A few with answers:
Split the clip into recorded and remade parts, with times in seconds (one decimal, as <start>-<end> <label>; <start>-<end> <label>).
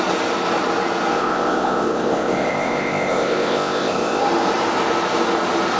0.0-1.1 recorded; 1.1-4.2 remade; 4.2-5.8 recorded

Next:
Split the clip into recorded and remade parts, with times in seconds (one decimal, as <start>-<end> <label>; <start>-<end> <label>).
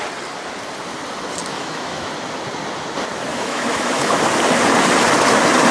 0.0-1.5 recorded; 1.5-2.1 remade; 2.1-3.3 recorded; 3.3-4.2 remade; 4.2-5.7 recorded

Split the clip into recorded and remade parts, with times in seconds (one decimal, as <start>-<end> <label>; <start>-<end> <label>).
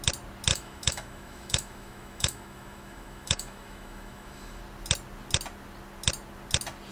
0.0-0.5 recorded; 0.5-4.6 remade; 4.6-6.9 recorded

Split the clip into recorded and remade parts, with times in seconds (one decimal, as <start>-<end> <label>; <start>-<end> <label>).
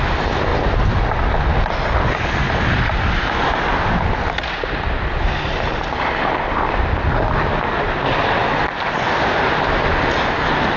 0.0-10.8 recorded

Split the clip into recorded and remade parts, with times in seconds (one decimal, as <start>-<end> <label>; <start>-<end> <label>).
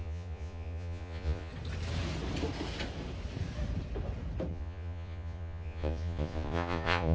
0.0-1.5 remade; 1.5-4.5 recorded; 4.5-7.1 remade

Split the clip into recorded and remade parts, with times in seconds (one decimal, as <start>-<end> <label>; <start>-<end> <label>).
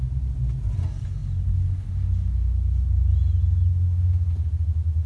0.0-5.1 recorded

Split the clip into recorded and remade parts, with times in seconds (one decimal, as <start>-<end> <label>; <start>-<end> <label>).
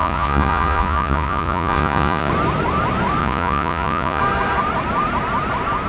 0.0-2.3 remade; 2.3-3.2 recorded; 3.2-4.2 remade; 4.2-5.9 recorded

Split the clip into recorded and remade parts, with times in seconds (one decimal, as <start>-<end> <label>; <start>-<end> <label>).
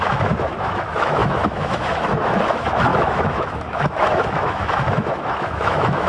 0.0-6.1 remade